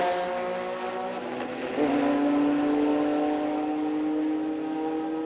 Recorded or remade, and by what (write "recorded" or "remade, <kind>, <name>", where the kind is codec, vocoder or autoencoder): recorded